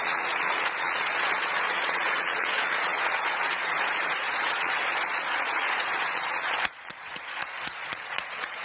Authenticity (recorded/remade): remade